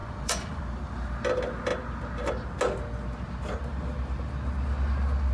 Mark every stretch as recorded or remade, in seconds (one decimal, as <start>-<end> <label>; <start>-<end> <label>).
0.0-0.6 remade; 0.6-5.3 recorded